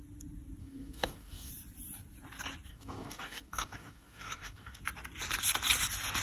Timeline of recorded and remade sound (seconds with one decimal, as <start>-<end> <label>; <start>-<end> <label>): 0.0-0.6 recorded; 0.6-1.5 remade; 1.5-2.7 recorded; 2.7-4.8 remade; 4.8-6.2 recorded